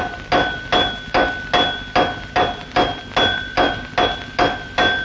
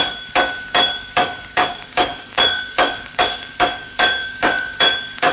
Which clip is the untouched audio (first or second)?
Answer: first